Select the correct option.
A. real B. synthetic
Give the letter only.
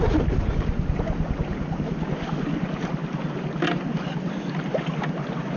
A